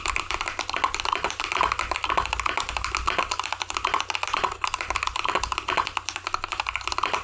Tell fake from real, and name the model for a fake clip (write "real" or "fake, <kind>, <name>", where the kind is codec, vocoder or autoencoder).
real